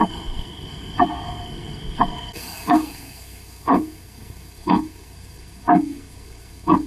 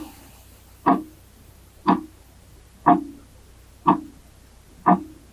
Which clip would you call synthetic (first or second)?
first